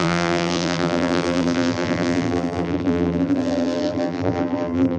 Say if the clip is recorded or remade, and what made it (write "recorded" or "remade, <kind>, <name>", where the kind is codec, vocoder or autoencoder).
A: remade, vocoder, BigVGAN v2